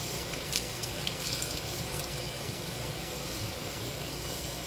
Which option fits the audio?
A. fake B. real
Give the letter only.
A